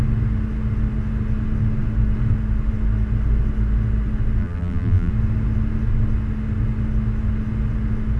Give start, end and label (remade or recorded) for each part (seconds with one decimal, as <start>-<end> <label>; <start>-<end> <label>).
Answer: 0.0-4.4 recorded; 4.4-5.1 remade; 5.1-8.2 recorded

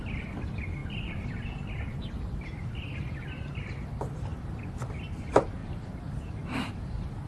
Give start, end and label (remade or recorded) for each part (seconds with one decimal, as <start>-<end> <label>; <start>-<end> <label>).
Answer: 0.0-0.8 remade; 0.8-1.9 recorded; 1.9-7.3 remade

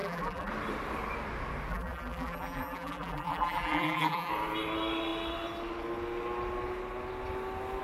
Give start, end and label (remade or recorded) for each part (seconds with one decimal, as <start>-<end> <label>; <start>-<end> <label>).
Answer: 0.0-0.5 remade; 0.5-1.7 recorded; 1.7-4.3 remade; 4.3-7.8 recorded